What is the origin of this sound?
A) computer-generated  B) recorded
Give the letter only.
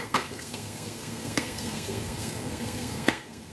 A